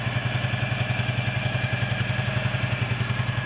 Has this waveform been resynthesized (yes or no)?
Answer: no